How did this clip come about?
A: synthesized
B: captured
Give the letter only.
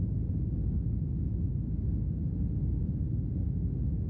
B